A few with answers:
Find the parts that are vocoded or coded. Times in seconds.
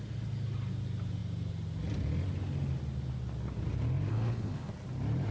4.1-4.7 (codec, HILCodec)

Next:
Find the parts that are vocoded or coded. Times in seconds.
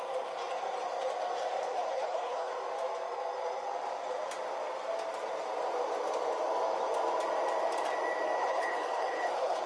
1.7-2.5 (codec, HILCodec); 8.4-9.7